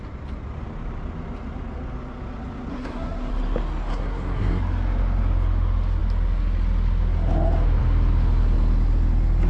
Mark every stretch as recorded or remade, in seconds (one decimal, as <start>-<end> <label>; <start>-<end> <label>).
0.0-2.7 recorded; 2.7-3.3 remade; 3.3-3.9 recorded; 3.9-4.6 remade; 4.6-9.5 recorded